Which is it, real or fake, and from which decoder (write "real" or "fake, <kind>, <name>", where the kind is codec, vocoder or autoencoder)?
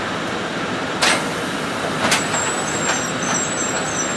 real